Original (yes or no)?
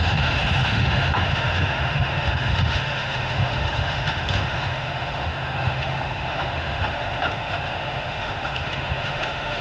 no